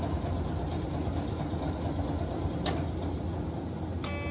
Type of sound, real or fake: real